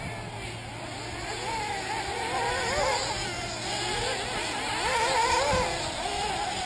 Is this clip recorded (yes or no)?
yes